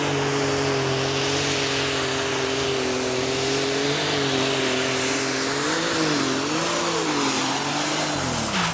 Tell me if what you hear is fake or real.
real